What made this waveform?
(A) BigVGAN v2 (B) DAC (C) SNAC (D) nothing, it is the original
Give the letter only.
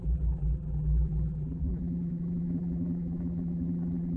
A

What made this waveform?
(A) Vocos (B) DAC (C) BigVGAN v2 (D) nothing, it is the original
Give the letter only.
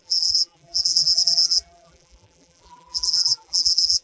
C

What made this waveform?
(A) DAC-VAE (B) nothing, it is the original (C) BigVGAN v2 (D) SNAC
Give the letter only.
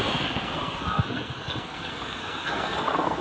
D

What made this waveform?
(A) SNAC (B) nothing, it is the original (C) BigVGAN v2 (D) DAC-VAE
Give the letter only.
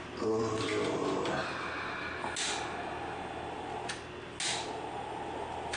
B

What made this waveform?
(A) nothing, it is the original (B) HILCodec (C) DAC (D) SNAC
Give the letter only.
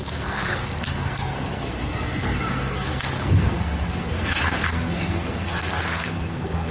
D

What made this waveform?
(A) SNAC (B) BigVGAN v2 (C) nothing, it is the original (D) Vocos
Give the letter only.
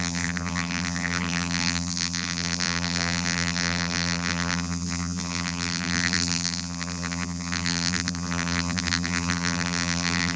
B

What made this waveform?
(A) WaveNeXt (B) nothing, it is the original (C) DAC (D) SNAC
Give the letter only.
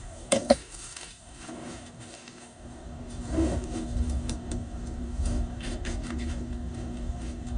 C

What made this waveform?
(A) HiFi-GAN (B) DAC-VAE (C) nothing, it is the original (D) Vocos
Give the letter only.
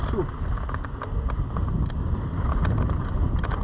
C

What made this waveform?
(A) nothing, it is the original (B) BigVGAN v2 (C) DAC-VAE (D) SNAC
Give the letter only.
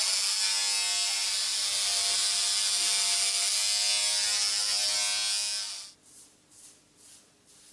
A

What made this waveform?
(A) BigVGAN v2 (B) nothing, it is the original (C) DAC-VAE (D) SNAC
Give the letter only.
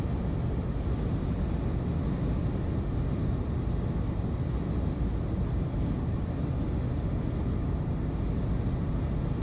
B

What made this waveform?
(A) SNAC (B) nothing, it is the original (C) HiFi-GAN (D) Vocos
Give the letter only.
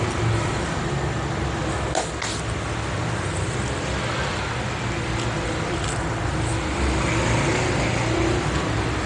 B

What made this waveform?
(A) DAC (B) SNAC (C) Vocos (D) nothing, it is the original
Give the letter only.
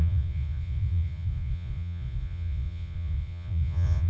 C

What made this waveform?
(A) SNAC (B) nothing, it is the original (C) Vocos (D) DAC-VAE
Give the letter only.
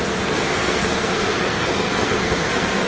A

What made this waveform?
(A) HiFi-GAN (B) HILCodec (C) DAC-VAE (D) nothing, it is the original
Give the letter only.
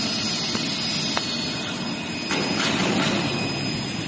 D